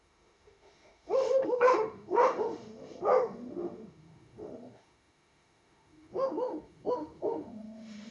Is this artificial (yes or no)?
yes